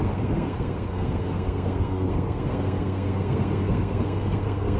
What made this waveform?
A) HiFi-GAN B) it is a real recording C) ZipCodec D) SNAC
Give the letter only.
D